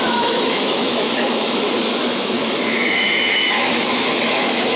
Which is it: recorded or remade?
remade